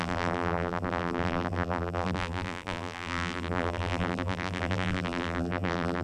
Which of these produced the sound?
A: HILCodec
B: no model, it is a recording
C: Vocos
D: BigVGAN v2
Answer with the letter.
D